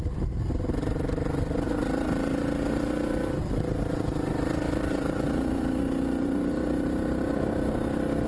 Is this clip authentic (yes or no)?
yes